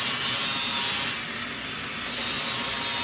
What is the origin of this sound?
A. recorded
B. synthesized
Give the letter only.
A